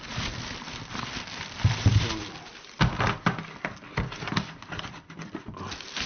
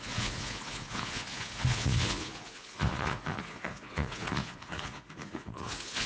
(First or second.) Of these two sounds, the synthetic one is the second